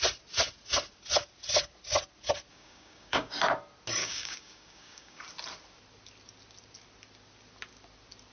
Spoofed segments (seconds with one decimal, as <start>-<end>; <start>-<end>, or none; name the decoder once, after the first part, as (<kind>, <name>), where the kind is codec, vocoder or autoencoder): 2.5-3.3 (codec, DAC); 4.0-5.2